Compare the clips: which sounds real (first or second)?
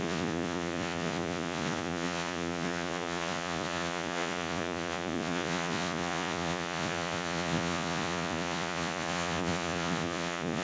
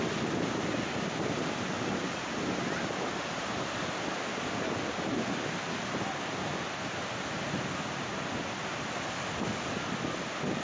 second